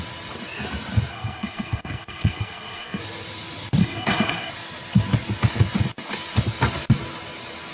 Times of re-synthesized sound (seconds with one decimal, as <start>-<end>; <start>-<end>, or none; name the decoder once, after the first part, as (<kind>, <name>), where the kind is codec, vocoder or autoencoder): 1.1-3.0 (codec, SNAC); 3.8-4.5